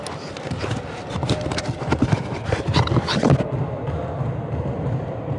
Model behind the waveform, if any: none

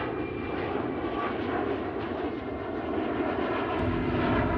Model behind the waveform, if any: none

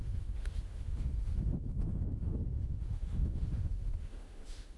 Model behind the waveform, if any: autoencoder, DAC-VAE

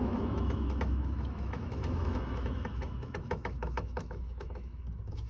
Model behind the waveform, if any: autoencoder, DAC-VAE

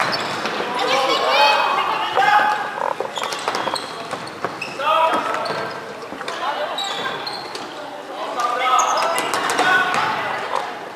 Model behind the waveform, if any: none